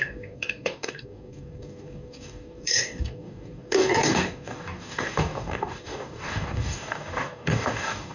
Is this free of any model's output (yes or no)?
no